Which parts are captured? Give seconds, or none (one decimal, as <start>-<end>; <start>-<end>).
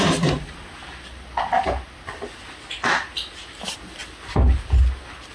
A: 0.0-5.3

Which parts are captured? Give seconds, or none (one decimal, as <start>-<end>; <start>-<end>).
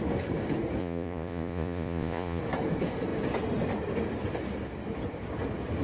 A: 0.0-0.8; 2.4-5.8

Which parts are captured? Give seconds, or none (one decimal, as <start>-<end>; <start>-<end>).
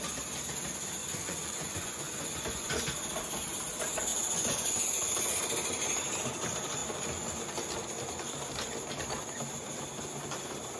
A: 0.0-1.0; 2.8-4.1; 5.5-10.8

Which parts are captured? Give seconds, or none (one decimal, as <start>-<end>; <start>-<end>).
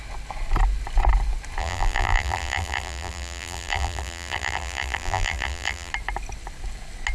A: 0.0-1.6; 5.9-7.1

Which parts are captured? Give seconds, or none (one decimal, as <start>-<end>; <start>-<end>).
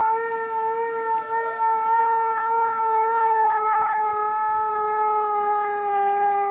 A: 0.0-2.0; 4.1-4.7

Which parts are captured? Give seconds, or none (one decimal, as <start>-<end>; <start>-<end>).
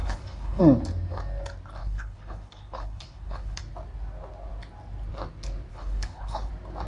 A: 0.6-1.8; 3.6-5.7; 6.5-6.9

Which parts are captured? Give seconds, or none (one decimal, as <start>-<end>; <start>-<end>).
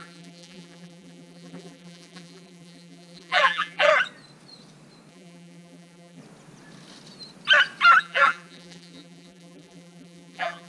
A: 3.9-5.1; 6.2-8.0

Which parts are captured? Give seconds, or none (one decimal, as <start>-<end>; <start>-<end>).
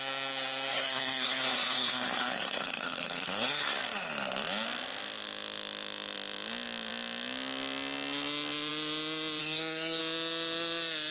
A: 0.0-0.7; 3.8-9.4; 10.0-11.1